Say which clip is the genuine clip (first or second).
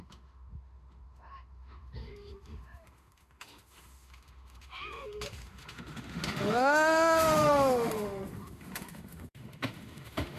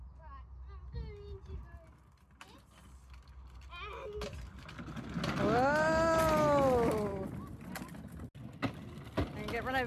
second